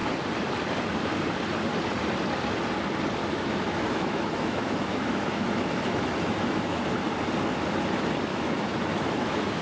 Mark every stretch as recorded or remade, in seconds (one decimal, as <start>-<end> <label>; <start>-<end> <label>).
0.0-3.2 recorded; 3.2-6.8 remade; 6.8-8.3 recorded; 8.3-9.6 remade